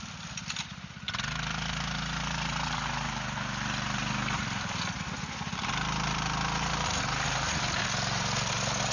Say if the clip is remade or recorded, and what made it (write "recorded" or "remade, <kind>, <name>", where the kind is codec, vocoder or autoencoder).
recorded